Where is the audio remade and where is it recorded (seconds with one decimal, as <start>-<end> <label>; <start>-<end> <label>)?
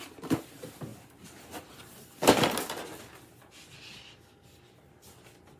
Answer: 0.0-5.6 recorded